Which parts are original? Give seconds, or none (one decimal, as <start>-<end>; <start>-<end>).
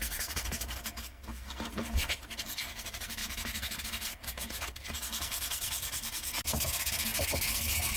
none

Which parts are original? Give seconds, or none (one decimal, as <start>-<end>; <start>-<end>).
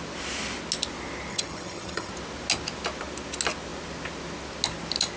0.0-1.3; 2.1-5.2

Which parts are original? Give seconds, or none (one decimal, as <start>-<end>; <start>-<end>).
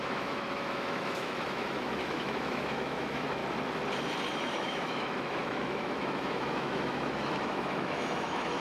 3.4-4.5